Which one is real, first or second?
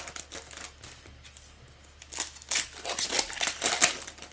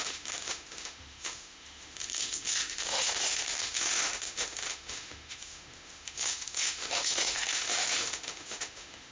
first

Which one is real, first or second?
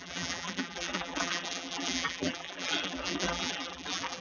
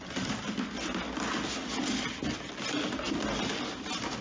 second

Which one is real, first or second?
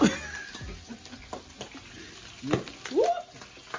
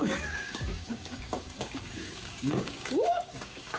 first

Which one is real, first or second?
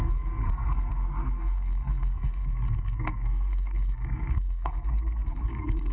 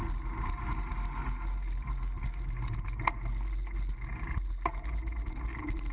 second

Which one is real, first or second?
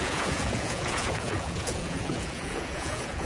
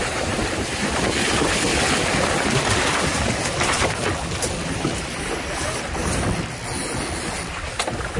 second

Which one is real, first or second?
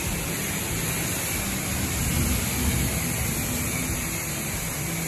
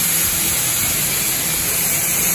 first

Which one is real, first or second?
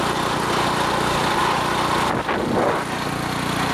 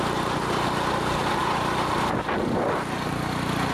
first